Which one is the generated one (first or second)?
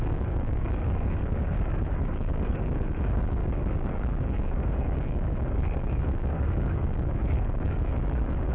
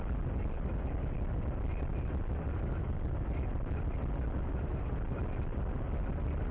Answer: first